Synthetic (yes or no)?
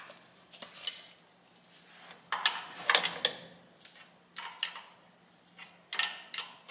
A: no